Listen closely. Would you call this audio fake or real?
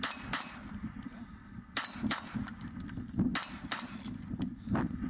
real